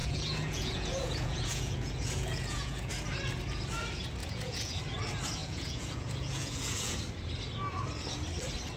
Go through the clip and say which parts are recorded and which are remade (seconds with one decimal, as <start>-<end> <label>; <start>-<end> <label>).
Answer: 0.0-2.9 remade; 2.9-4.2 recorded; 4.2-4.8 remade; 4.8-5.4 recorded; 5.4-7.0 remade; 7.0-8.8 recorded